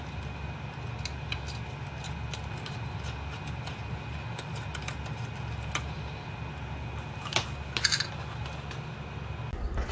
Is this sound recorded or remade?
recorded